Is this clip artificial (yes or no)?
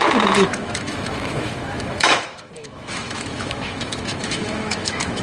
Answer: yes